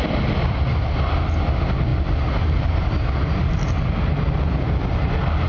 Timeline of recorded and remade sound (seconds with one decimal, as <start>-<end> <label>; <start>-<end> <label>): 0.0-5.5 recorded